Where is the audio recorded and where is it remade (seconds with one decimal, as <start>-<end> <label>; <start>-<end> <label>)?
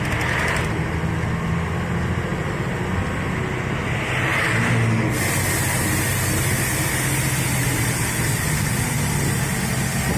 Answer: 0.0-10.2 recorded